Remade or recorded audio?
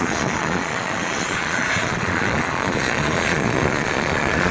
remade